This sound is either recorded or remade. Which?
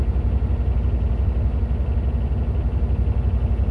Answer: recorded